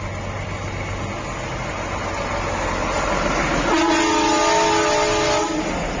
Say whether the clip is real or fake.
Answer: real